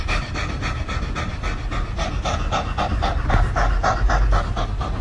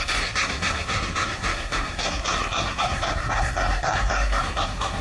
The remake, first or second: second